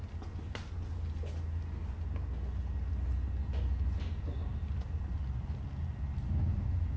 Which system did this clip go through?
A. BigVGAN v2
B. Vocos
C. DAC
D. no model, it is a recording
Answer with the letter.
D